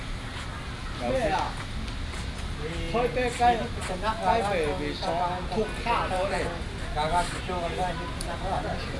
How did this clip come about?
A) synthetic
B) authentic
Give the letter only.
B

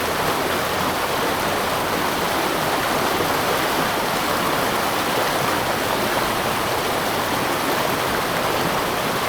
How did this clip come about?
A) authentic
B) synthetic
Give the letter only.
A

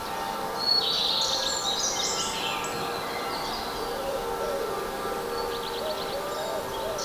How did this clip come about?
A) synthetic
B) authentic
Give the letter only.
B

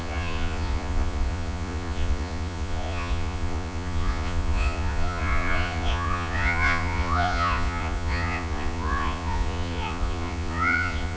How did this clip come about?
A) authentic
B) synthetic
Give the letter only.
B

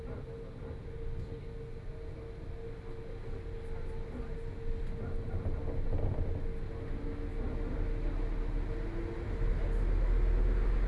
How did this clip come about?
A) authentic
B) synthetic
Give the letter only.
A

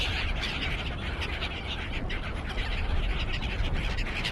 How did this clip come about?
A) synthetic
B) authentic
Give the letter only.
B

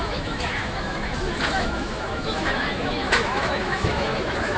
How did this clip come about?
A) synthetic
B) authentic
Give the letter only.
A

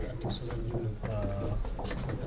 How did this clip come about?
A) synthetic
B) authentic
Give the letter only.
B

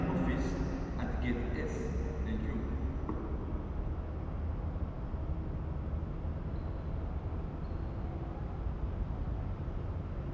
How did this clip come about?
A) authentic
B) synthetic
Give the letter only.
A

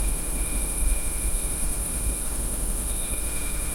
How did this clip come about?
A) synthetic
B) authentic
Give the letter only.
A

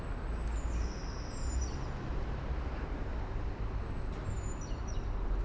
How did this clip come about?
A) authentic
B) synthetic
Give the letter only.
A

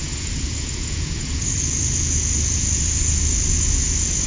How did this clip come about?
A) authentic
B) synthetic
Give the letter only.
B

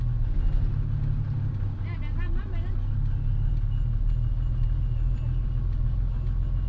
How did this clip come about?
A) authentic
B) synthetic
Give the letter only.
A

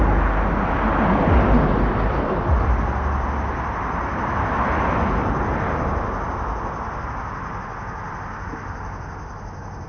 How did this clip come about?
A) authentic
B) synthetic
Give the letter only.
A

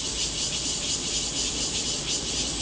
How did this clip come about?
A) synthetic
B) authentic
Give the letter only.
B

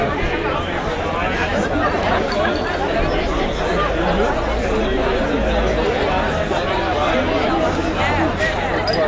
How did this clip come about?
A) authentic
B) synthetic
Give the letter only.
A